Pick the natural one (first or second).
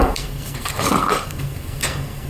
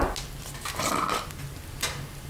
second